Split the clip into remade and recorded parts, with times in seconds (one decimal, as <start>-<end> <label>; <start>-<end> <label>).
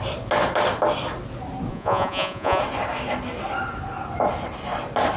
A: 0.0-1.7 recorded; 1.7-2.6 remade; 2.6-5.2 recorded